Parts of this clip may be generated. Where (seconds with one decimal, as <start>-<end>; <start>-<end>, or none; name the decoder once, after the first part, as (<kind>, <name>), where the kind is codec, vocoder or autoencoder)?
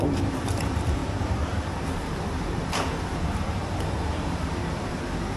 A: 0.0-4.6 (vocoder, BigVGAN v2)